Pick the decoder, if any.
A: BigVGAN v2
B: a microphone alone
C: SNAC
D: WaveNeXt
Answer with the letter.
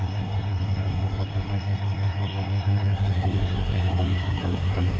C